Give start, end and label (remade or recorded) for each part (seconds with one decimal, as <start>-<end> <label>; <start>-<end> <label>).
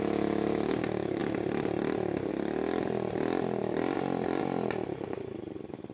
0.0-5.9 recorded